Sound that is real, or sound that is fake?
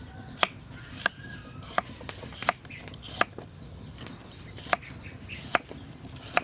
real